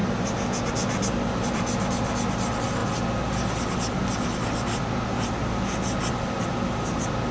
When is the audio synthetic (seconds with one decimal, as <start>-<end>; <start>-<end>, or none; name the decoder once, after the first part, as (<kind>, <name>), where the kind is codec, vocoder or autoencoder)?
none